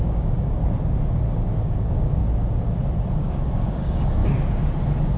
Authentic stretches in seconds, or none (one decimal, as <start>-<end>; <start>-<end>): 0.6-1.2; 2.2-3.2; 4.2-5.2

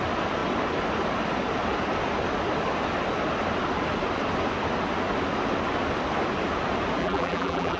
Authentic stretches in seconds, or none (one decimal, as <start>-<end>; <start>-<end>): 0.0-7.0